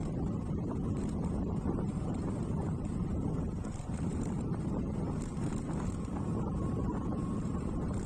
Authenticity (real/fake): fake